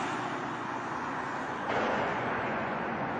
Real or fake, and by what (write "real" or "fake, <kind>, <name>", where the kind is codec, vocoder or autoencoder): fake, vocoder, Vocos